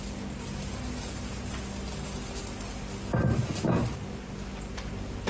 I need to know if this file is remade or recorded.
recorded